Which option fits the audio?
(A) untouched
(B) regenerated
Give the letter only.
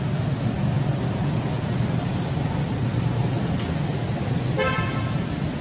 A